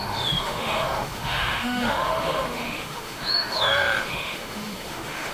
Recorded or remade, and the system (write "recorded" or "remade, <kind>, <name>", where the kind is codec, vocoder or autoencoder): remade, autoencoder, DAC-VAE